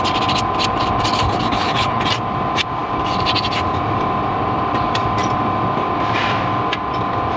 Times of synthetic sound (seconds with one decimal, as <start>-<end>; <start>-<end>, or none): 1.1-2.0